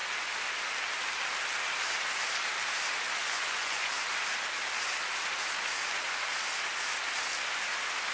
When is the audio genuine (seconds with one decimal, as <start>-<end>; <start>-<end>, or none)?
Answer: 0.0-3.2; 3.9-8.1